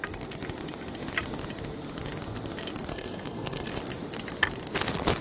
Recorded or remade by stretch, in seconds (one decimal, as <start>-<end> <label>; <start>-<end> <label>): 0.0-2.9 recorded; 2.9-3.7 remade; 3.7-5.2 recorded